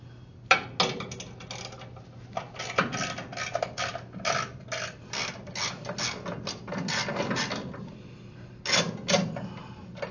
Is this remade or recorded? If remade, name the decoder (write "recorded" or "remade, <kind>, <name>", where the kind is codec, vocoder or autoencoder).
recorded